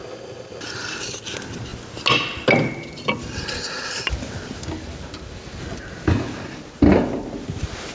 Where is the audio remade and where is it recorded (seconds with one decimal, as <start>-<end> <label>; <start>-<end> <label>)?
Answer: 0.0-7.9 recorded